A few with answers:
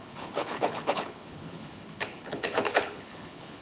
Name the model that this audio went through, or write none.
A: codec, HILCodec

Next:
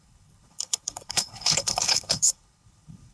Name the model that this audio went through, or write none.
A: codec, HILCodec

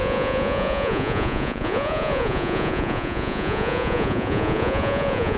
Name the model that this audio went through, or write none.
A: vocoder, Vocos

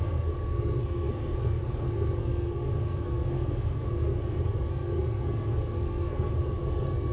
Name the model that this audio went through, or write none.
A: codec, SNAC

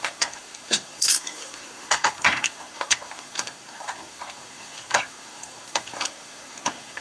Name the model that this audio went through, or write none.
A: codec, SNAC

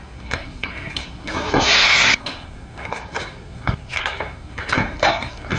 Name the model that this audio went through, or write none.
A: codec, SNAC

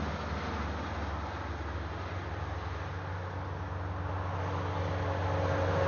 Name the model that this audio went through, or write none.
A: none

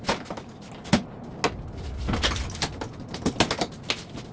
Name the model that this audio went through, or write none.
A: none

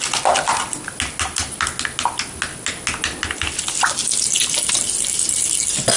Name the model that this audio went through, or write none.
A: none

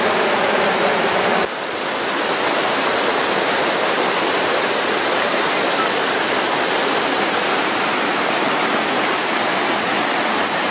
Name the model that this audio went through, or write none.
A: vocoder, BigVGAN v2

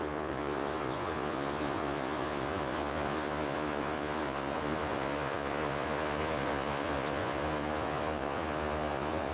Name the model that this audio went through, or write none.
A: vocoder, Vocos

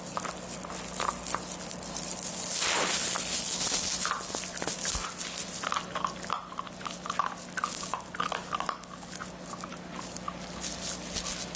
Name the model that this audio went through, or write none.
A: none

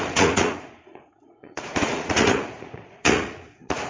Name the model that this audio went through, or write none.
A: vocoder, Vocos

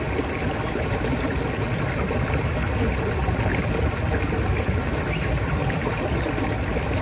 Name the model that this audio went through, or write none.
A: none